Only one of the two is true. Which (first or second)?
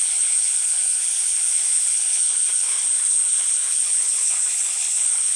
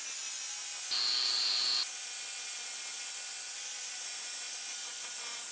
second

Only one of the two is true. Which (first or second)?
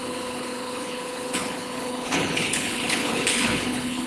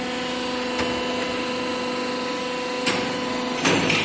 second